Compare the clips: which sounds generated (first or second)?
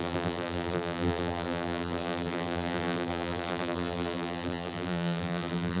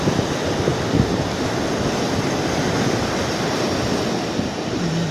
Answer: first